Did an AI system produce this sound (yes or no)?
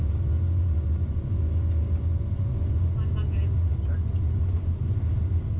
no